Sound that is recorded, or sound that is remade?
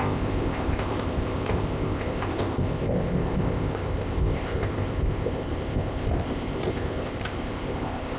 remade